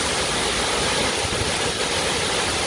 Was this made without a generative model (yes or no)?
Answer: yes